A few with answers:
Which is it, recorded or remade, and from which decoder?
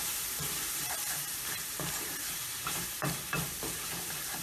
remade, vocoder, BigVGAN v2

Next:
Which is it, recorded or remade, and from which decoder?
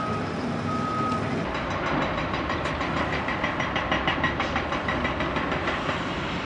recorded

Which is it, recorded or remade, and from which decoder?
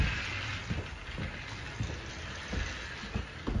recorded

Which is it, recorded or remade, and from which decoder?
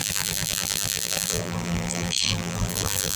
remade, vocoder, BigVGAN v2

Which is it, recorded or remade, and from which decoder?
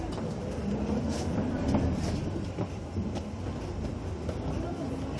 recorded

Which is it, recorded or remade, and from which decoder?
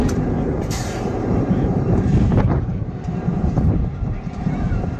remade, vocoder, BigVGAN v2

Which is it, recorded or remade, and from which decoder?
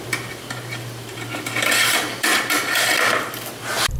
remade, vocoder, BigVGAN v2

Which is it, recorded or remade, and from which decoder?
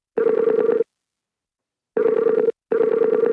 recorded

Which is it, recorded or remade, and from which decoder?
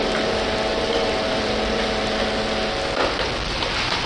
recorded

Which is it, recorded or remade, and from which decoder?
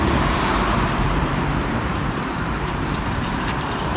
remade, vocoder, BigVGAN v2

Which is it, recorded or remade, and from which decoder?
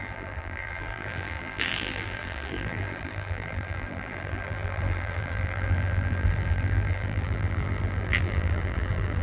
remade, vocoder, BigVGAN v2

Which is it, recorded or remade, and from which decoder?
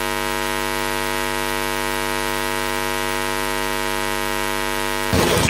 recorded